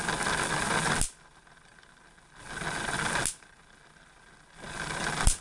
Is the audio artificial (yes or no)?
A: no